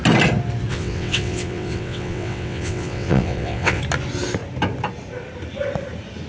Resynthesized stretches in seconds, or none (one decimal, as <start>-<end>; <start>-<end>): 0.7-3.8